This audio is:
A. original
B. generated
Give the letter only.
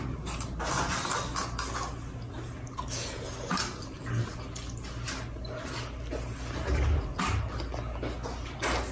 A